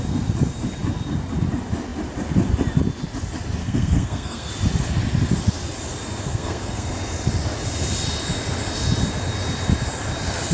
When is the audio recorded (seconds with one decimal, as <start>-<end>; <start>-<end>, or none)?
0.0-3.6; 4.5-6.3; 6.9-10.5